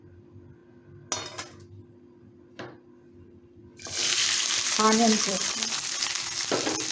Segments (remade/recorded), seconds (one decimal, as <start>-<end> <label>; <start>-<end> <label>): 0.0-3.6 recorded; 3.6-5.8 remade; 5.8-6.9 recorded

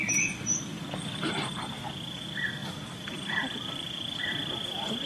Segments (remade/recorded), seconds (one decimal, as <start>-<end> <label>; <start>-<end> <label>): 0.0-2.6 recorded; 2.6-4.2 remade; 4.2-5.1 recorded

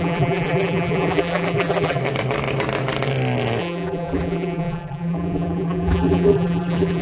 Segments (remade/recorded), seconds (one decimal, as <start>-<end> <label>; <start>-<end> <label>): 0.0-2.0 remade; 2.0-3.6 recorded; 3.6-7.0 remade

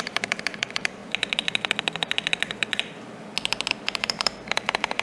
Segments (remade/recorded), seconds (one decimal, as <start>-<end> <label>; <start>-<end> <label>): 0.0-1.0 remade; 1.0-3.7 recorded; 3.7-5.0 remade

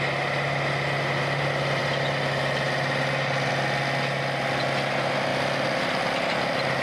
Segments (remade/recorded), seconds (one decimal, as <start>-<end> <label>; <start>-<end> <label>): 0.0-6.8 recorded

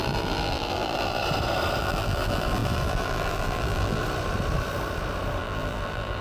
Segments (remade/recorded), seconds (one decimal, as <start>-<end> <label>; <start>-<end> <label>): 0.0-1.2 remade; 1.2-1.8 recorded; 1.8-4.0 remade; 4.0-5.4 recorded; 5.4-6.2 remade